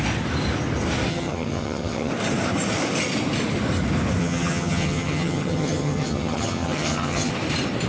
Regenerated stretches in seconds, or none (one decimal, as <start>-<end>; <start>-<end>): 1.1-2.1; 4.2-7.3